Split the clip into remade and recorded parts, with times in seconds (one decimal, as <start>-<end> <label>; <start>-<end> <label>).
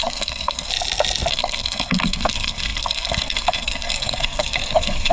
0.0-0.7 remade; 0.7-1.3 recorded; 1.3-5.1 remade